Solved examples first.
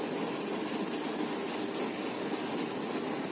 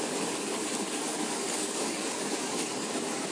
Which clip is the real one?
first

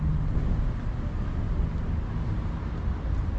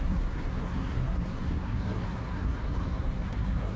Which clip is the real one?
first